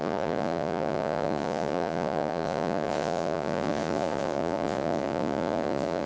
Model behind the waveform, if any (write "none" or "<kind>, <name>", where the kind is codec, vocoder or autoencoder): vocoder, Vocos